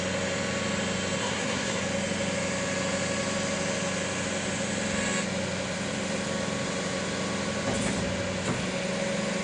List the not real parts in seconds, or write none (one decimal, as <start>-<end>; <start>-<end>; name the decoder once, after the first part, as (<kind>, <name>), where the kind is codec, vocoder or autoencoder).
1.2-1.8 (codec, SNAC)